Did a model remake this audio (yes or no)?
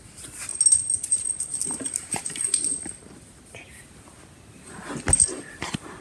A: no